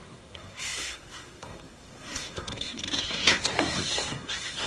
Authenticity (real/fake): fake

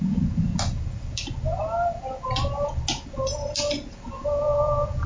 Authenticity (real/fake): real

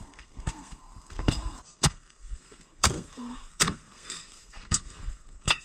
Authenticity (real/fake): fake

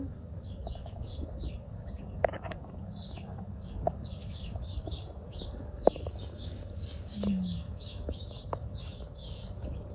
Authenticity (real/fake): fake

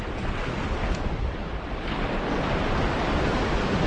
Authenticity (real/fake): real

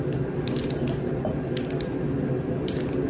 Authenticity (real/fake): real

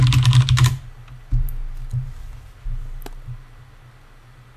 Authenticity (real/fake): real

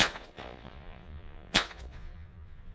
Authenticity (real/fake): fake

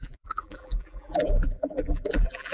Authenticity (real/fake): fake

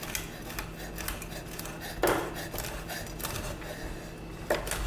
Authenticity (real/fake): real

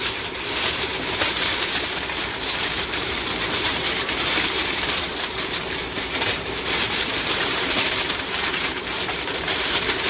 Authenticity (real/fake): fake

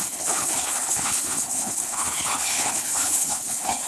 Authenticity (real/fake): fake